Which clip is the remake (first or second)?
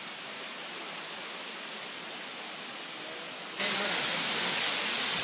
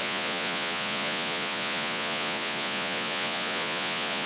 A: second